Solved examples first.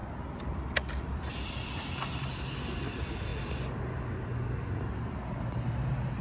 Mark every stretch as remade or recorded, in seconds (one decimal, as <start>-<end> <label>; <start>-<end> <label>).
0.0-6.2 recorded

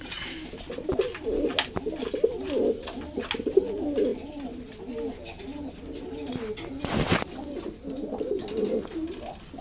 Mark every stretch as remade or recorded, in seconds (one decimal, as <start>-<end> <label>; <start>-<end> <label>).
0.0-9.6 recorded

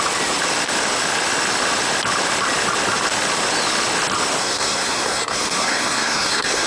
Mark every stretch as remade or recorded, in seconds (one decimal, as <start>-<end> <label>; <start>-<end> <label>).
0.0-4.4 recorded; 4.4-6.7 remade

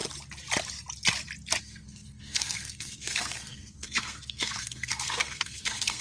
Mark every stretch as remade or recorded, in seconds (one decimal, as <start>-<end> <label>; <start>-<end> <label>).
0.0-1.6 recorded; 1.6-6.0 remade